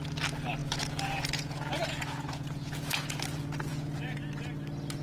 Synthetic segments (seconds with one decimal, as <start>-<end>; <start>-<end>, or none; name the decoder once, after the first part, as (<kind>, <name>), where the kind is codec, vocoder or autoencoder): 0.6-3.2 (vocoder, Vocos); 3.7-4.2